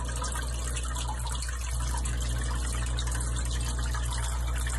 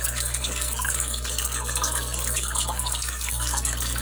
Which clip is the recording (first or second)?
first